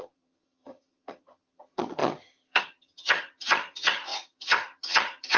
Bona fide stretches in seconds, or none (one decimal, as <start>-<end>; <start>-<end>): none